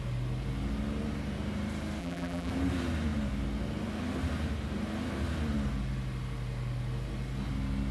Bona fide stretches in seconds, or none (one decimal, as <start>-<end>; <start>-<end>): 0.0-2.0; 2.5-7.9